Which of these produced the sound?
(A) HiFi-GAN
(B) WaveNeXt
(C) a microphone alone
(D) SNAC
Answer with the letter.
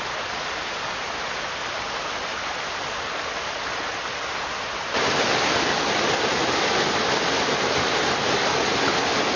C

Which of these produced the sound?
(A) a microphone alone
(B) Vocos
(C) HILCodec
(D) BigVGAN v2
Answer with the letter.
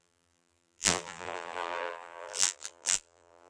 D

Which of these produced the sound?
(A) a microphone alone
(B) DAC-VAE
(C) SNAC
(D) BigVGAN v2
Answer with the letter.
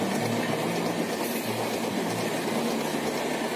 A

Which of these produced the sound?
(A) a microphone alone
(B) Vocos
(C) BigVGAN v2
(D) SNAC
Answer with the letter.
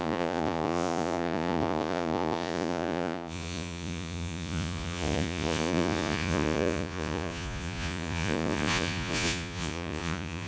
B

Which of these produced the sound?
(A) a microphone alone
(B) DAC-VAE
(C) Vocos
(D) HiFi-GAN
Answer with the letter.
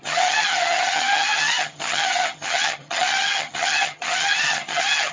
D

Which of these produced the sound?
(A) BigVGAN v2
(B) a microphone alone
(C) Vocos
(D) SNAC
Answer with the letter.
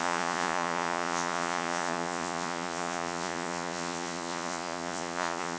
C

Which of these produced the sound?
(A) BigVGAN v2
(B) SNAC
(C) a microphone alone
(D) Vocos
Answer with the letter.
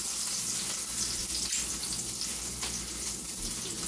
C